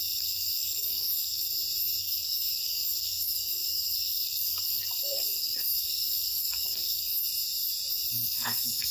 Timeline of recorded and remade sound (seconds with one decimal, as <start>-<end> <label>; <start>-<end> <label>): 0.0-1.5 remade; 1.5-2.0 recorded; 2.0-7.2 remade; 7.2-8.1 recorded; 8.1-8.9 remade